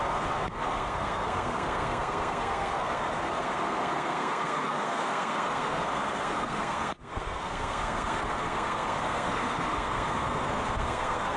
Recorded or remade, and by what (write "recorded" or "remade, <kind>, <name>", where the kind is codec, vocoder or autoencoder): remade, codec, SNAC